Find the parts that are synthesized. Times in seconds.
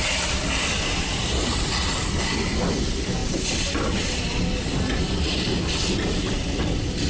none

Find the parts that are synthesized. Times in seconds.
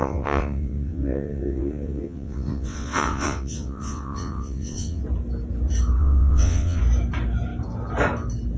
0.0-5.0; 6.0-6.8